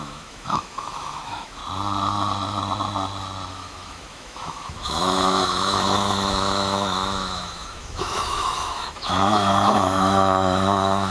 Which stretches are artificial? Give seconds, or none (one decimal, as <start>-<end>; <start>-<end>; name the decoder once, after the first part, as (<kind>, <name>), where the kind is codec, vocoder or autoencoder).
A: 0.0-1.6 (autoencoder, DAC-VAE); 3.5-11.1